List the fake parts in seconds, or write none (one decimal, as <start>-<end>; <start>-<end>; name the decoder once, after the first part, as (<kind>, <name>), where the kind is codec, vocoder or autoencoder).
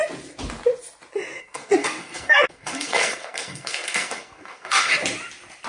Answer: 1.4-4.9 (codec, SNAC)